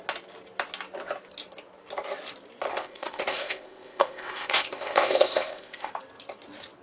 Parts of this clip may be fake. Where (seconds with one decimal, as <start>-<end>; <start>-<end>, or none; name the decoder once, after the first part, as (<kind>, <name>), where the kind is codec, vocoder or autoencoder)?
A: 2.7-5.9 (codec, ZipCodec)